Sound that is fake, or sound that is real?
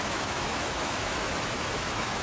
fake